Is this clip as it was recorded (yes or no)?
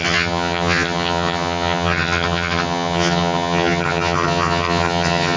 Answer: no